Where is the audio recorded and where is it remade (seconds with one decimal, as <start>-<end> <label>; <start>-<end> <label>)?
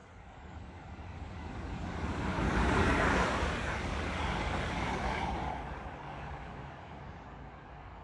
0.0-8.0 remade